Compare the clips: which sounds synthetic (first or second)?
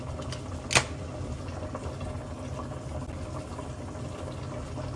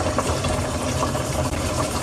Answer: second